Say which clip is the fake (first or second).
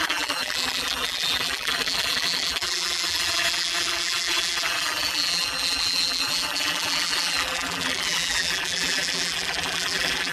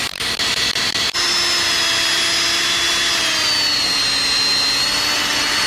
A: first